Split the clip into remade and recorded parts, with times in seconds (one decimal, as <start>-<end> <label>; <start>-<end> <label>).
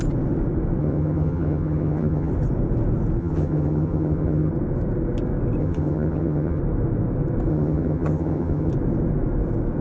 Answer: 0.0-0.8 recorded; 0.8-2.3 remade; 2.3-3.2 recorded; 3.2-4.5 remade; 4.5-5.6 recorded; 5.6-6.6 remade; 6.6-7.5 recorded; 7.5-8.7 remade; 8.7-9.8 recorded